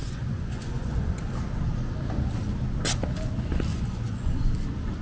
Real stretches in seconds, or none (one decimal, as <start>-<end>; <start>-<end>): 1.2-3.7; 4.5-5.0